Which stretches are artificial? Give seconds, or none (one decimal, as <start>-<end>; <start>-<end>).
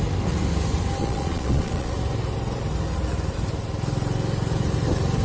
1.0-1.9